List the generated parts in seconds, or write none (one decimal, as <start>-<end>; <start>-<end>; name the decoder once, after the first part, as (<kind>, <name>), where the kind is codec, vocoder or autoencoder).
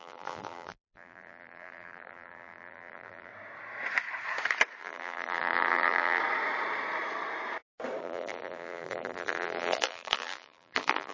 0.0-3.3 (vocoder, BigVGAN v2); 4.8-6.2; 8.0-11.1